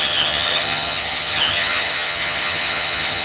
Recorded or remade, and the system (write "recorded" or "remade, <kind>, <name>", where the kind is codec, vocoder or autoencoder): remade, vocoder, HiFi-GAN